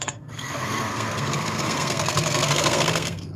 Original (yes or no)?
no